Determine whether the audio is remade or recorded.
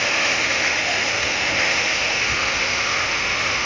remade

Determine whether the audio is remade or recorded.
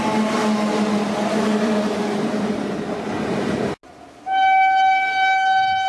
recorded